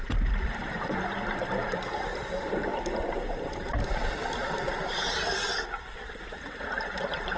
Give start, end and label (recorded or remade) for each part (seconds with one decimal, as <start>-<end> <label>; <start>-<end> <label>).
0.0-7.4 remade